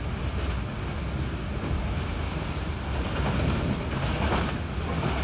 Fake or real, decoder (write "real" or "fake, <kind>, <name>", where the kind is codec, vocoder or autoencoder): real